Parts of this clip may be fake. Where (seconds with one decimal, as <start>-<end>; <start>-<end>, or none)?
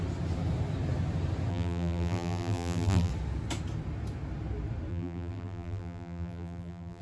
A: 1.5-3.1; 4.9-7.0